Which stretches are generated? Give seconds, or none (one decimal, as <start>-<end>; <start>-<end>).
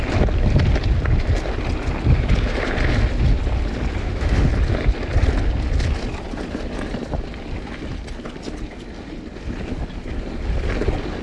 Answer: 4.0-4.5